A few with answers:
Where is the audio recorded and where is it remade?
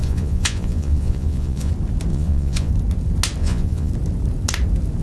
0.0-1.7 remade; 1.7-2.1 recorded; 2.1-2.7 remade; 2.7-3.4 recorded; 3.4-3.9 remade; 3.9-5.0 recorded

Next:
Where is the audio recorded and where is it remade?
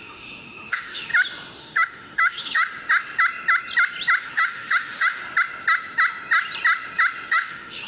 0.0-1.1 remade; 1.1-1.6 recorded; 1.6-2.7 remade; 2.7-4.2 recorded; 4.2-5.2 remade; 5.2-7.3 recorded; 7.3-7.9 remade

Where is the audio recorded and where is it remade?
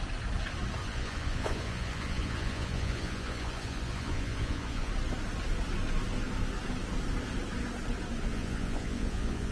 0.0-0.8 recorded; 0.8-4.9 remade; 4.9-8.3 recorded; 8.3-9.5 remade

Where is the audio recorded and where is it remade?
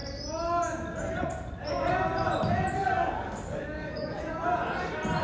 0.0-2.8 recorded; 2.8-4.2 remade; 4.2-5.2 recorded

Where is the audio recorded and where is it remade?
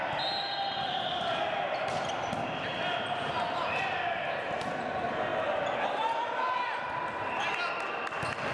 0.0-8.5 recorded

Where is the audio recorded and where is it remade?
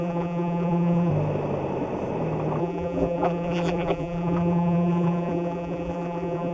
0.0-1.1 remade; 1.1-2.6 recorded; 2.6-6.5 remade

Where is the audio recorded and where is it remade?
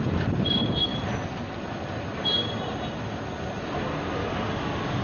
0.0-5.0 recorded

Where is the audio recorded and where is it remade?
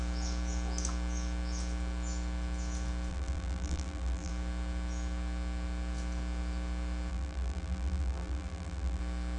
0.0-3.1 recorded; 3.1-4.3 remade; 4.3-7.1 recorded; 7.1-9.0 remade; 9.0-9.4 recorded